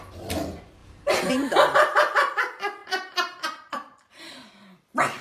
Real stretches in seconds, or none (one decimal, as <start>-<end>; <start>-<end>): 0.0-0.8; 1.3-2.8; 4.5-5.2